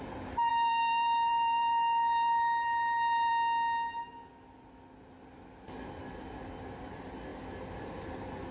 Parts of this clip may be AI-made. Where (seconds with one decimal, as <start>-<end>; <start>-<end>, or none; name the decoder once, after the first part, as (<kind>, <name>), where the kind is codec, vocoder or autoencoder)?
0.5-3.3 (vocoder, BigVGAN v2)